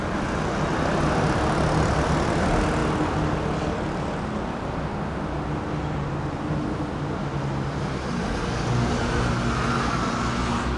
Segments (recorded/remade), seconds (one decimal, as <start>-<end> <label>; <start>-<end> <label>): 0.0-10.8 recorded